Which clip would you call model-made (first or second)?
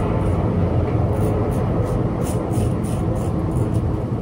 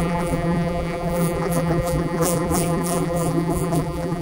second